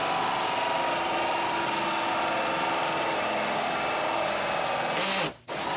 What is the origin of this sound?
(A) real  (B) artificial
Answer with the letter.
A